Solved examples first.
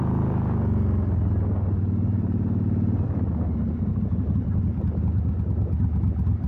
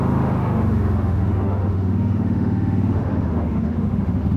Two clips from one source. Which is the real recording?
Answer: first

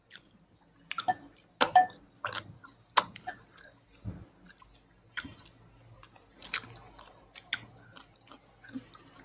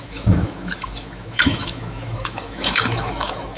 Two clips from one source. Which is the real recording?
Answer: first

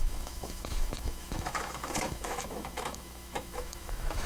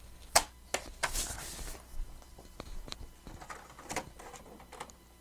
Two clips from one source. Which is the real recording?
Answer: second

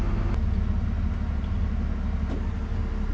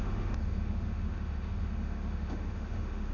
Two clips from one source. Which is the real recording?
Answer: first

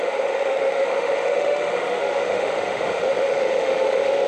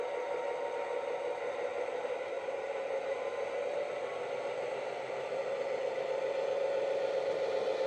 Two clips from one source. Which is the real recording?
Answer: second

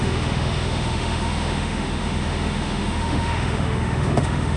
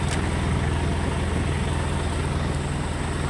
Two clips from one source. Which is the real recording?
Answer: second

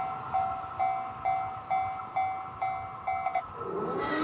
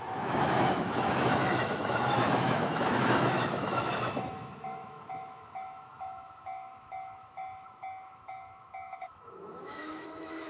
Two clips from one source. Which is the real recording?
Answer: first